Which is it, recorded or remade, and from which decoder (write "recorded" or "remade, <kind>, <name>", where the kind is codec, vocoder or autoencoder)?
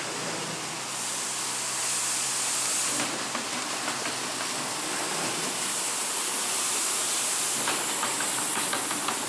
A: recorded